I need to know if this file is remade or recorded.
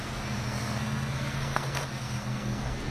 remade